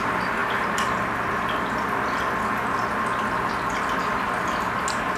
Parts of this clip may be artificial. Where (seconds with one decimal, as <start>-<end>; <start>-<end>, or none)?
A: none

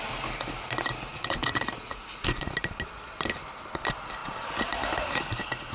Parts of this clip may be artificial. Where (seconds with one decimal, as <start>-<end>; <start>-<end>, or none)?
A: 1.1-2.5

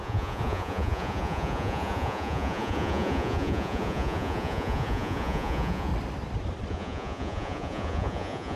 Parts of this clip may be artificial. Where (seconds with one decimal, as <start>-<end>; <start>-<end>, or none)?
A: 0.0-5.9; 6.7-8.6

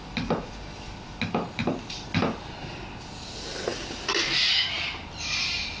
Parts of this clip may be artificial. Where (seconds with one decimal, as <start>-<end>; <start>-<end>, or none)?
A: none